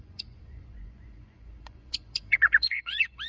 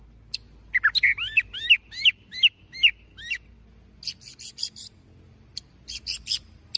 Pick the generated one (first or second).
first